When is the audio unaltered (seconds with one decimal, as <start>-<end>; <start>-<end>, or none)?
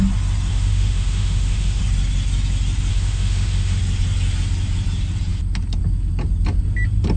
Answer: 0.0-0.5; 1.8-2.9; 3.8-7.2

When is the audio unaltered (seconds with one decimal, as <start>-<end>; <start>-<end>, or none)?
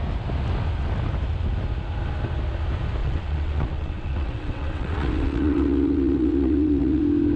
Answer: 0.0-3.0; 7.0-7.4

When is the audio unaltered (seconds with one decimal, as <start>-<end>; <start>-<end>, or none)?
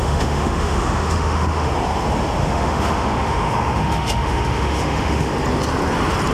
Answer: 1.7-2.4; 5.3-6.3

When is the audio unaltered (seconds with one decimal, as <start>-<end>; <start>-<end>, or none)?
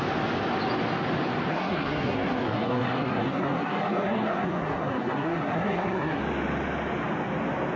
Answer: 0.0-1.5; 6.2-7.8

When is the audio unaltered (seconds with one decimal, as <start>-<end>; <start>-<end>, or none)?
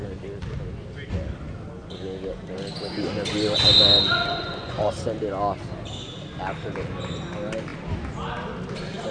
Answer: 0.0-4.1; 4.9-9.1